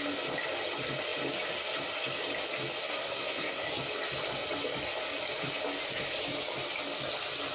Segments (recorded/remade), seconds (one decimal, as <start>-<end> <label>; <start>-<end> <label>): 0.0-2.8 recorded; 2.8-3.8 remade; 3.8-7.5 recorded